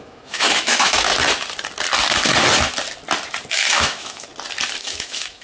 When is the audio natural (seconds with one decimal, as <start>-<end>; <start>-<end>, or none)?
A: 1.1-3.5; 4.3-4.8